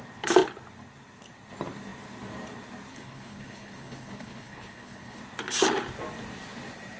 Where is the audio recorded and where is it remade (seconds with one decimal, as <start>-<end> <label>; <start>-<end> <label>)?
0.0-2.9 recorded; 2.9-5.2 remade; 5.2-7.0 recorded